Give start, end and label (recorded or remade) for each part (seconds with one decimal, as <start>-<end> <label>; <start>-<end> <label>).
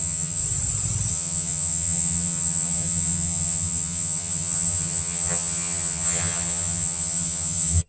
0.0-0.4 remade; 0.4-1.1 recorded; 1.1-7.9 remade